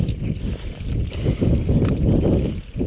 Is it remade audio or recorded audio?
recorded